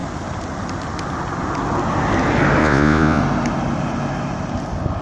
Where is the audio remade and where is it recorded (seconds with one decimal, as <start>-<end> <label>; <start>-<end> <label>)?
0.0-2.6 recorded; 2.6-3.2 remade; 3.2-5.0 recorded